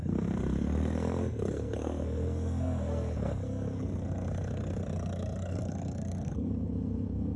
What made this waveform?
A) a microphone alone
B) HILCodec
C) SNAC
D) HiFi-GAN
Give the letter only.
C